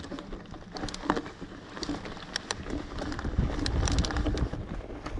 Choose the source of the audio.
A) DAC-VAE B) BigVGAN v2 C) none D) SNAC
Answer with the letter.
C